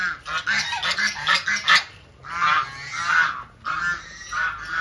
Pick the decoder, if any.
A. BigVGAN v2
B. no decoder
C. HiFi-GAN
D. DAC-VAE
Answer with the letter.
B